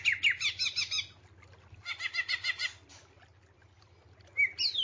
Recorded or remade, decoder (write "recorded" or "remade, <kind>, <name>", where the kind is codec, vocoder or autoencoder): recorded